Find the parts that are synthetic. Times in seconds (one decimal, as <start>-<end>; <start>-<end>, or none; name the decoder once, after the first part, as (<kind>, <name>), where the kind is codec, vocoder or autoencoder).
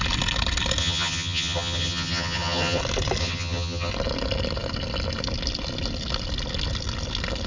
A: 0.8-2.8 (vocoder, HiFi-GAN); 3.2-3.9